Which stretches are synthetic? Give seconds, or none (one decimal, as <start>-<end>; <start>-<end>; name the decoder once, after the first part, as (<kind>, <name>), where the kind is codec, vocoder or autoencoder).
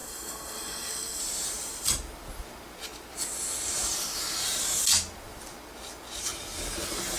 0.0-1.2 (codec, SNAC)